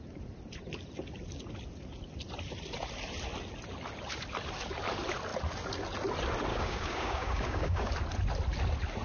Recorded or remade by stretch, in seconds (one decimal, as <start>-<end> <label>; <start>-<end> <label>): 0.0-6.5 recorded; 6.5-7.9 remade; 7.9-9.0 recorded

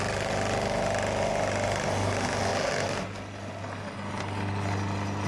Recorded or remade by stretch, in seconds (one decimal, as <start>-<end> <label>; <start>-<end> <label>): 0.0-5.3 recorded

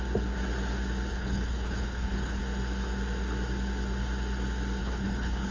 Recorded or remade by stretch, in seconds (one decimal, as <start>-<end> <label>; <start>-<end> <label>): 0.0-1.1 recorded; 1.1-2.4 remade; 2.4-4.8 recorded; 4.8-5.5 remade

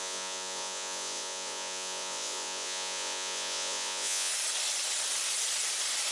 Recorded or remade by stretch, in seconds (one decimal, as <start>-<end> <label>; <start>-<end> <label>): 0.0-4.3 remade; 4.3-6.1 recorded

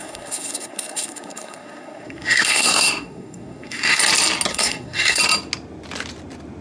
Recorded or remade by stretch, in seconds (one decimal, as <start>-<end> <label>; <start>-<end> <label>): 0.0-4.0 remade; 4.0-4.5 recorded; 4.5-5.2 remade; 5.2-6.6 recorded

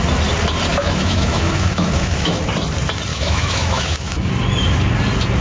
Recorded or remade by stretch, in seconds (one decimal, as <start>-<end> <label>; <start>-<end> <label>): 0.0-0.7 recorded; 0.7-2.4 remade; 2.4-3.1 recorded; 3.1-4.3 remade; 4.3-5.4 recorded

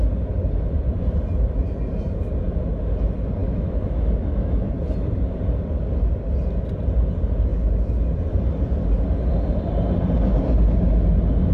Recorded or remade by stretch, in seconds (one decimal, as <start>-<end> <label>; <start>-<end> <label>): 0.0-3.4 recorded; 3.4-4.7 remade; 4.7-11.5 recorded